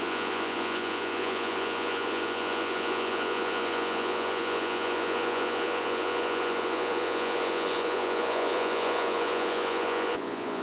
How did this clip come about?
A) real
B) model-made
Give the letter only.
B